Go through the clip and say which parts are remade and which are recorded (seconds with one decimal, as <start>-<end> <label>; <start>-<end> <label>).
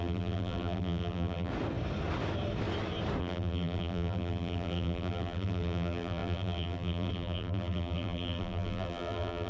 0.0-1.5 remade; 1.5-3.2 recorded; 3.2-9.5 remade